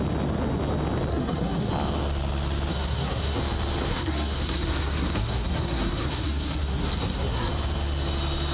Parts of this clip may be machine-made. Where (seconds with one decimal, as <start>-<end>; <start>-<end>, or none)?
1.1-1.7; 2.7-3.4; 3.9-7.5